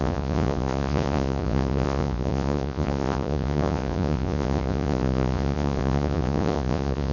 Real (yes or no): no